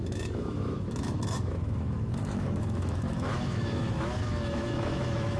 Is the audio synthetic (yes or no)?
yes